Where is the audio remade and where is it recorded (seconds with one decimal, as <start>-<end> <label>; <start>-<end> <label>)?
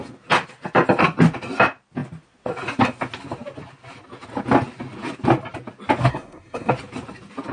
0.0-6.1 recorded; 6.1-6.7 remade; 6.7-7.5 recorded